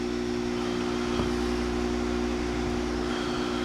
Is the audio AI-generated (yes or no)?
no